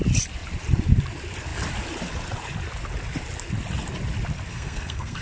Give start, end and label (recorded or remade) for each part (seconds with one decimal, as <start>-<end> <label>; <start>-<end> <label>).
0.0-4.5 recorded; 4.5-5.2 remade